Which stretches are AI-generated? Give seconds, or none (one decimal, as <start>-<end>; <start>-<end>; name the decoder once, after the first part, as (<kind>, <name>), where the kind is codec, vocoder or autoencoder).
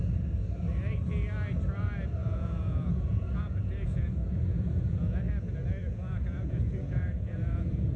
2.2-5.2 (vocoder, Vocos); 5.8-8.0